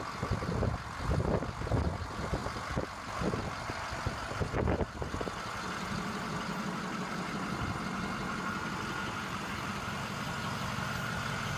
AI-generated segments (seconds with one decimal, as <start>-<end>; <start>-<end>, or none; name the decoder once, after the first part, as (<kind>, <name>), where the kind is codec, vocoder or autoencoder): none